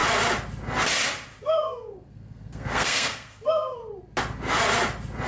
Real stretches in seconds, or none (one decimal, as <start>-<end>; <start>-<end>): 0.0-1.4; 3.8-5.3